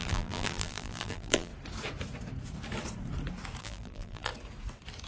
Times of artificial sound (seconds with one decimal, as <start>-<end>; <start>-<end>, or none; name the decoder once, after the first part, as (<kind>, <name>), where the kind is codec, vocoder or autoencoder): 0.0-1.5 (vocoder, BigVGAN v2); 3.6-4.3